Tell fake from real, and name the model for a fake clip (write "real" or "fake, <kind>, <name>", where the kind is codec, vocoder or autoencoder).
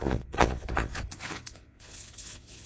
fake, vocoder, Vocos